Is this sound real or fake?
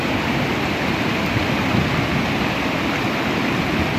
real